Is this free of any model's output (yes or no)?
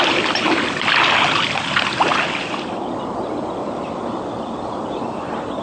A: yes